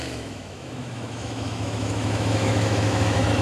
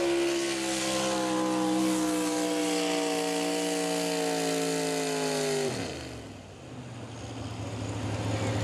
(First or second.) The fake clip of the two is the first